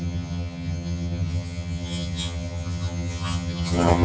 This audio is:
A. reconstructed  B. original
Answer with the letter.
A